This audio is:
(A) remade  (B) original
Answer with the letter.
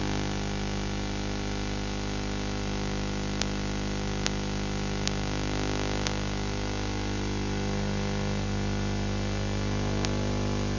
B